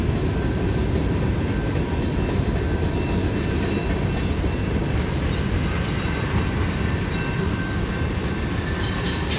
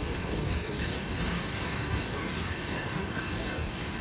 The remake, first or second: second